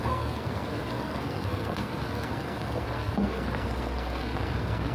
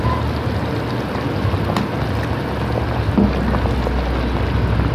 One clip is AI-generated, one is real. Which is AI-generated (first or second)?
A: first